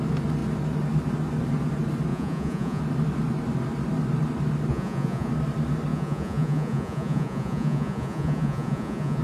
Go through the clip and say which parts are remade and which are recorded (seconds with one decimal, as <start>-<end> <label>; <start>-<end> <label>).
0.0-2.1 recorded; 2.1-2.8 remade; 2.8-4.7 recorded; 4.7-5.3 remade; 5.3-5.9 recorded; 5.9-9.2 remade